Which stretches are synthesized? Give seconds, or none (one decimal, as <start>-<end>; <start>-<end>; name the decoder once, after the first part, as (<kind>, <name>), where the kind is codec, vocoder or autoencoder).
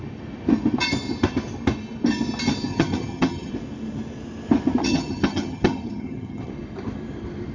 2.7-3.5 (vocoder, HiFi-GAN); 4.8-6.5